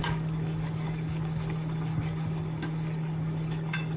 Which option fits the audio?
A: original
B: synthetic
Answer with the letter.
B